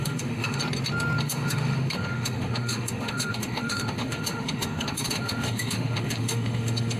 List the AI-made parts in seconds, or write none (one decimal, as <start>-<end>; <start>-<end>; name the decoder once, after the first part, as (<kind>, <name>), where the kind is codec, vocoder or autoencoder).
0.0-0.6 (autoencoder, DAC-VAE); 1.2-7.0